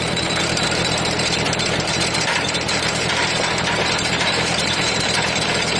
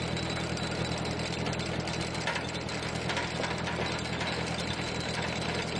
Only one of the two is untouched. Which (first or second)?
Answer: second